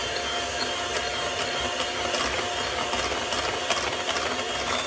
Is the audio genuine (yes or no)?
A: yes